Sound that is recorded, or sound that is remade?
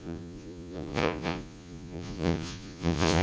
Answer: remade